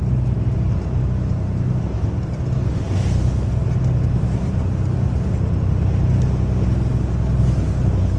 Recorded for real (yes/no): yes